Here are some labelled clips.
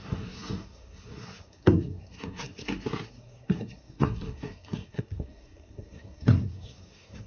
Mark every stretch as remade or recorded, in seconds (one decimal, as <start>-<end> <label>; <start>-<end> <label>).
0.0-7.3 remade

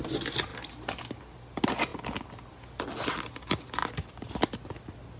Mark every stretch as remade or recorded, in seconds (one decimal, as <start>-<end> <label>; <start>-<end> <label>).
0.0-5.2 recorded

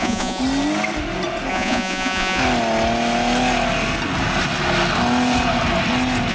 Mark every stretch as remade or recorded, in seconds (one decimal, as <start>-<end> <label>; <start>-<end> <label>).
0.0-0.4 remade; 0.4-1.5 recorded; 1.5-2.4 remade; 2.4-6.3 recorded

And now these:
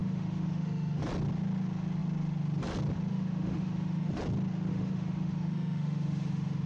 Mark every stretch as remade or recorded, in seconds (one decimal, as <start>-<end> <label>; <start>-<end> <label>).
0.0-1.0 remade; 1.0-3.1 recorded; 3.1-4.1 remade; 4.1-4.7 recorded; 4.7-6.7 remade

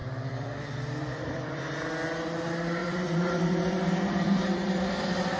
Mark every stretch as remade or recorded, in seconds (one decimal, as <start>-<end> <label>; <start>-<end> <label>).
0.0-1.6 remade; 1.6-2.8 recorded; 2.8-5.4 remade